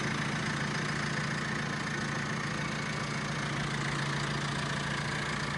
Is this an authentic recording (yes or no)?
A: yes